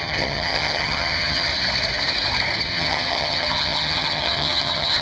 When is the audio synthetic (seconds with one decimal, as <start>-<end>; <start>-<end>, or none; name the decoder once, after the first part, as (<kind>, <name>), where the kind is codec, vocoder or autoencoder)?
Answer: 0.0-1.5 (vocoder, HiFi-GAN); 2.6-5.0